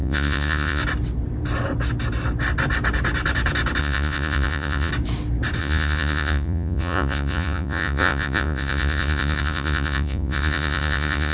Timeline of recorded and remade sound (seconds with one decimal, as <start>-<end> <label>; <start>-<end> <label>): 0.0-0.8 remade; 0.8-3.8 recorded; 3.8-4.9 remade; 4.9-5.6 recorded; 5.6-11.3 remade

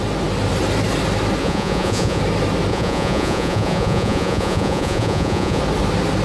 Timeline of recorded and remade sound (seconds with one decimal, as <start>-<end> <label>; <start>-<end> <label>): 0.0-1.4 recorded; 1.4-2.2 remade; 2.2-2.7 recorded; 2.7-5.6 remade; 5.6-6.2 recorded

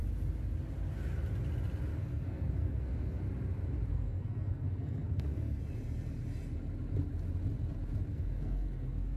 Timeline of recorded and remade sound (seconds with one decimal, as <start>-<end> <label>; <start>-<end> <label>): 0.0-1.9 recorded; 1.9-3.2 remade; 3.2-3.9 recorded; 3.9-5.6 remade; 5.6-8.1 recorded; 8.1-9.2 remade